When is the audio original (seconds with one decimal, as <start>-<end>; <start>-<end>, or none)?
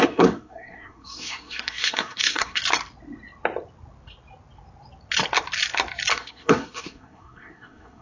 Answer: 2.6-6.1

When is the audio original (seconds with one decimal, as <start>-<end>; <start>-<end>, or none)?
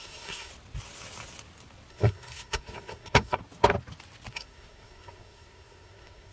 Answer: 0.5-1.9; 3.4-4.3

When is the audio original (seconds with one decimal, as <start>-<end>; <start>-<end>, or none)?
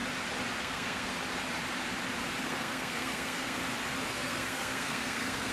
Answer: 0.0-0.6; 1.1-2.4; 3.6-4.1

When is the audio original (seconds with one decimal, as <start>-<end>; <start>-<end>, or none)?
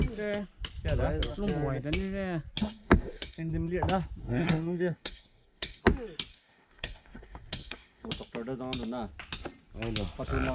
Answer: 0.0-2.6; 3.5-4.2; 5.8-6.3; 8.1-10.5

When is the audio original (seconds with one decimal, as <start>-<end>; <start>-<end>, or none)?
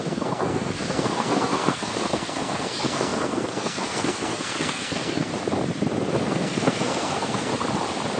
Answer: 5.3-6.2; 7.5-8.2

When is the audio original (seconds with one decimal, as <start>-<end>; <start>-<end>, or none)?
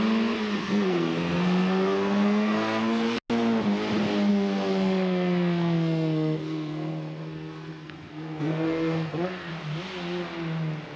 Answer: 0.0-0.6; 3.2-4.3; 9.5-11.0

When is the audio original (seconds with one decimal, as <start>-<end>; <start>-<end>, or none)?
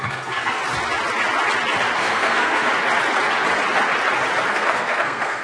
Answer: 0.6-2.0; 2.7-4.5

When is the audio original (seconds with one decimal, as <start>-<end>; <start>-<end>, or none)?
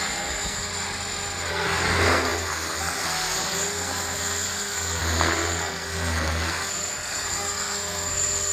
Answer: 0.7-1.5